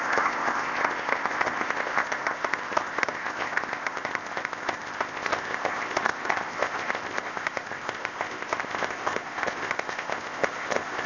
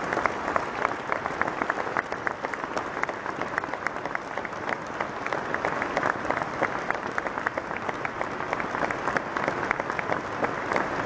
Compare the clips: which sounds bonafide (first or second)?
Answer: second